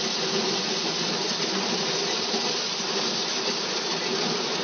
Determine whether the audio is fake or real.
real